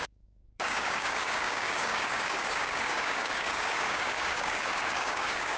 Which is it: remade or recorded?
remade